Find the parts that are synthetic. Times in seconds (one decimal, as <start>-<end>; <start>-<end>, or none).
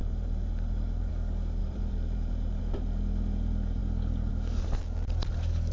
0.0-1.1; 1.6-2.6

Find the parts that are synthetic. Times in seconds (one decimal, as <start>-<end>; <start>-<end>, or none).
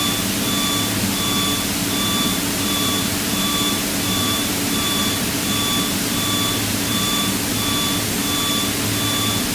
2.3-5.5; 6.7-7.2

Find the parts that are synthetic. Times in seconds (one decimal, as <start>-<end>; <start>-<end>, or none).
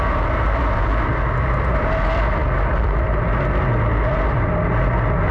none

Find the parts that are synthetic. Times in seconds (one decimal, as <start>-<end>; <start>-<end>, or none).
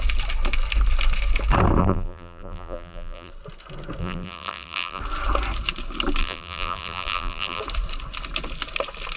1.8-3.3; 4.0-5.0; 6.2-7.6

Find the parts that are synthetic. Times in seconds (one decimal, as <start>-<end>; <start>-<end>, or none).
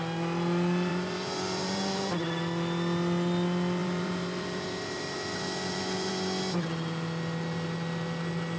0.9-2.1; 3.8-6.1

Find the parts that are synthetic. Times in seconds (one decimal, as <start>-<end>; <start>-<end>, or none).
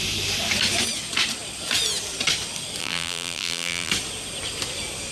2.8-3.9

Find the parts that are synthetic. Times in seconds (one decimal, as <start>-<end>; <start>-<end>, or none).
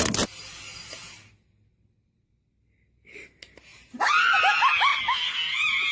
none